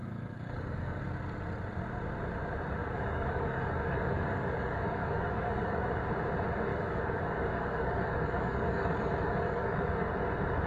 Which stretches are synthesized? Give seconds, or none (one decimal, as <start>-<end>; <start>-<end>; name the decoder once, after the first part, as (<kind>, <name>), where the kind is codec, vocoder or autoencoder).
0.0-1.0 (codec, DAC); 2.8-5.9; 6.7-10.1